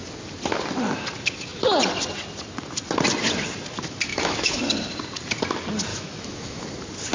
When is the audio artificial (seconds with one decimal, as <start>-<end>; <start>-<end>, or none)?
4.1-4.6; 5.9-6.6